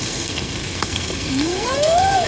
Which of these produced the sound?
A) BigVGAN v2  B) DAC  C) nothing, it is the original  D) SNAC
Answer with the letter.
D